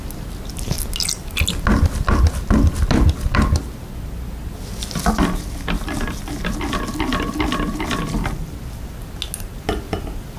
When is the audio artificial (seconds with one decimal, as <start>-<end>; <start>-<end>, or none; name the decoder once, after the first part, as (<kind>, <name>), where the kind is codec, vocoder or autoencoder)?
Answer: none